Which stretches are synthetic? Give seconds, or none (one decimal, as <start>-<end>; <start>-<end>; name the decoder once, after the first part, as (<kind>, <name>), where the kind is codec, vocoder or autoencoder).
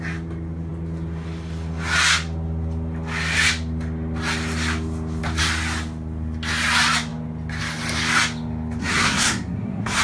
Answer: 8.8-10.0 (codec, SNAC)